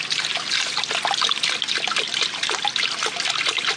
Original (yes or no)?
yes